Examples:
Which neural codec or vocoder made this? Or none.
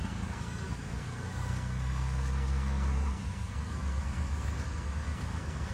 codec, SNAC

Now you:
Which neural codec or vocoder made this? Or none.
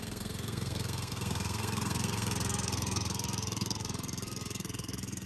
codec, SNAC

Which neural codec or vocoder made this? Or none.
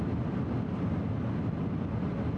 none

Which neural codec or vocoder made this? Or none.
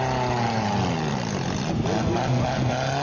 none